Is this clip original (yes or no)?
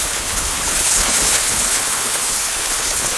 no